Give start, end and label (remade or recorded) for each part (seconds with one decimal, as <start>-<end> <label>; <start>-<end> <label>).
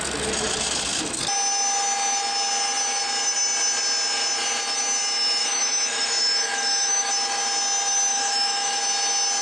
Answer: 0.0-5.4 recorded; 5.4-7.1 remade; 7.1-8.1 recorded; 8.1-8.8 remade; 8.8-9.4 recorded